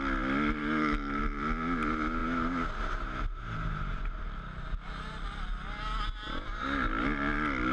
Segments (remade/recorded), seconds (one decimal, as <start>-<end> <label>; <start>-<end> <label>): 0.0-0.6 recorded; 0.6-1.2 remade; 1.2-7.7 recorded